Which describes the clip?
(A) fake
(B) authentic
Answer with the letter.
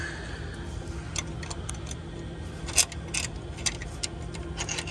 B